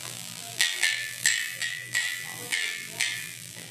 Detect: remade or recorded remade